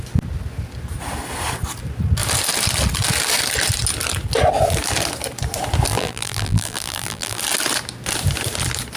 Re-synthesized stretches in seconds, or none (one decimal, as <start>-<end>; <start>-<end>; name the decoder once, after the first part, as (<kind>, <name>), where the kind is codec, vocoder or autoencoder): 5.9-7.4 (vocoder, BigVGAN v2)